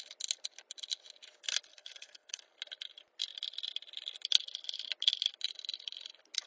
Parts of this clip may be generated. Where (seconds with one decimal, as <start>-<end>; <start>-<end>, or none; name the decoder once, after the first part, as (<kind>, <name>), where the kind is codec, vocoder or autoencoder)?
1.7-2.4 (codec, SNAC)